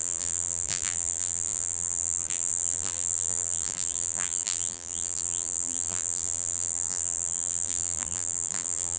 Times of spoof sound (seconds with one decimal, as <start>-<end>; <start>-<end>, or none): 0.0-9.0